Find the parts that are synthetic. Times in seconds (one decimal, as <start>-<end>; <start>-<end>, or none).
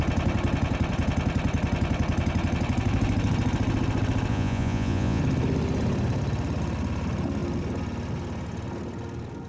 4.3-5.2